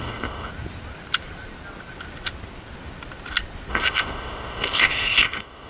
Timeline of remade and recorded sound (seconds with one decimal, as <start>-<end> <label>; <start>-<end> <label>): 0.0-0.5 remade; 0.5-3.7 recorded; 3.7-5.7 remade